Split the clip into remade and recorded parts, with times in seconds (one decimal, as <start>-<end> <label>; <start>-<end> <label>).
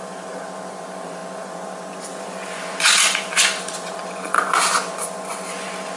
0.0-6.0 remade